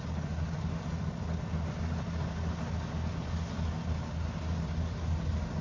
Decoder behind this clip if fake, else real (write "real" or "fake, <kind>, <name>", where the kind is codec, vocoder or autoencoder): real